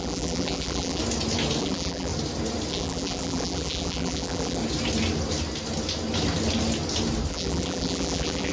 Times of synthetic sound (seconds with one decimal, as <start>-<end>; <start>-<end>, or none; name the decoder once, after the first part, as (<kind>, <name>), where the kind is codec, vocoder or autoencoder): 0.0-1.0 (vocoder, BigVGAN v2); 1.6-2.1; 2.7-4.6; 7.3-8.5